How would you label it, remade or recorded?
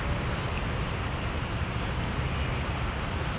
recorded